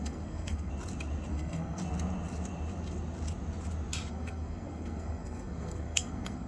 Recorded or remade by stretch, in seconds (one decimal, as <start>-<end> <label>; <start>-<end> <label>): 0.0-0.7 remade; 0.7-1.3 recorded; 1.3-1.8 remade; 1.8-4.1 recorded; 4.1-6.5 remade